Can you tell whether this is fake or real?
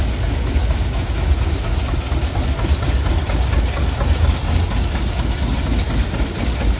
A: real